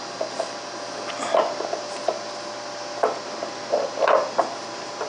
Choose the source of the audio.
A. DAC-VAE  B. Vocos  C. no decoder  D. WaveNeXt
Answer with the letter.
C